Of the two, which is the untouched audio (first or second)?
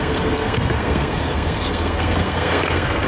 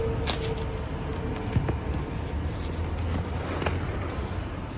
second